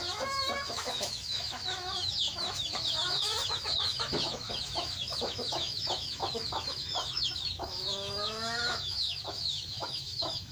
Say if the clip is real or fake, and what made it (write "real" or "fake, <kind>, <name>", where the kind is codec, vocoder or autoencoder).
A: fake, autoencoder, DAC-VAE